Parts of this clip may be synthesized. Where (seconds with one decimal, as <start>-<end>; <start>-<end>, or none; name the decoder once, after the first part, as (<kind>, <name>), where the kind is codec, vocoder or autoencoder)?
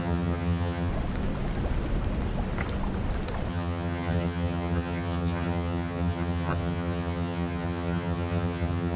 0.0-0.9 (vocoder, HiFi-GAN); 3.5-9.0